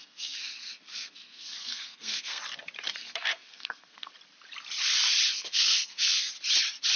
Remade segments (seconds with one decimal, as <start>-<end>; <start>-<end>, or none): 0.0-2.4; 3.0-4.1; 5.3-6.3